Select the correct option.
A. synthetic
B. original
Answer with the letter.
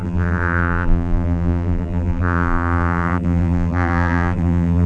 A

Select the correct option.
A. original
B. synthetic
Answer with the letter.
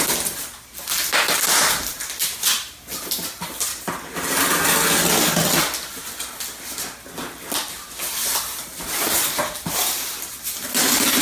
A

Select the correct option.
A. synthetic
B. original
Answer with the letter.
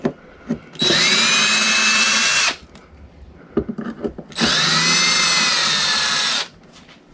B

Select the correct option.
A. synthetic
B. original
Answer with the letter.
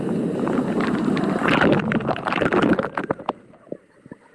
A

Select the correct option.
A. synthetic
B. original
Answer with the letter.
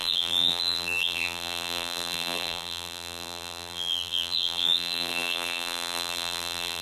A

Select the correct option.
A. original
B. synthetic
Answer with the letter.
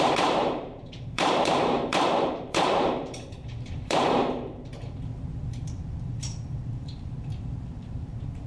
B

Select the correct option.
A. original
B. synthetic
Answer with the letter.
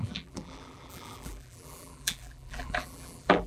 B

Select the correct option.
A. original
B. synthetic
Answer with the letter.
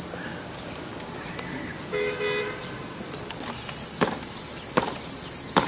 A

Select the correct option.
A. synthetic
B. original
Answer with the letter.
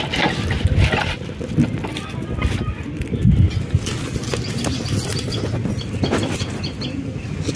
B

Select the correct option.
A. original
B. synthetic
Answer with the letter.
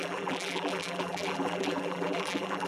B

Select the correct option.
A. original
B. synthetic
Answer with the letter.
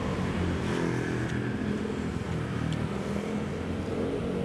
A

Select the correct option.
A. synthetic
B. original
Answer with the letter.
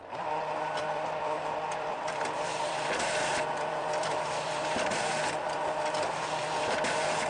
A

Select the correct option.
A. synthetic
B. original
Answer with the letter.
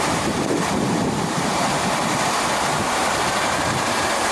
A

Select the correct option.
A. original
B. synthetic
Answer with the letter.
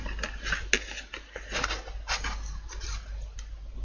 A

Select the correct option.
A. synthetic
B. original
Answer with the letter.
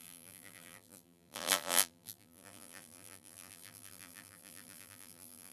A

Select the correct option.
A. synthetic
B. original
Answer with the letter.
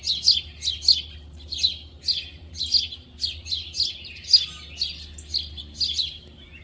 B